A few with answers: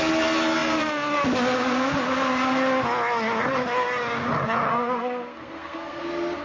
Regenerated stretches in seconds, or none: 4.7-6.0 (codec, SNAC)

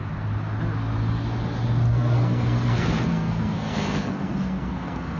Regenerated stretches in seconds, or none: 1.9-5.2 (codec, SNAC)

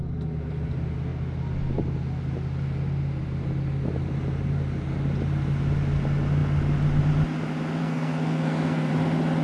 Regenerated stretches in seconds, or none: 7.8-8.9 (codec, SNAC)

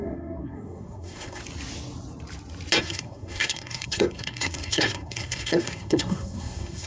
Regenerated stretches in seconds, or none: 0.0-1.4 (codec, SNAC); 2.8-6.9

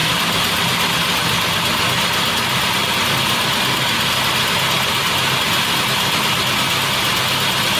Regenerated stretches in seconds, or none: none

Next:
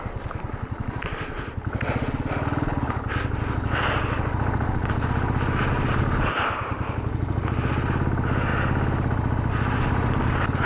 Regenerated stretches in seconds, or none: none

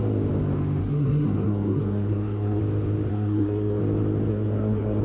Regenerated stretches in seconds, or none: 0.8-2.6 (codec, SNAC); 3.1-3.8; 4.3-5.0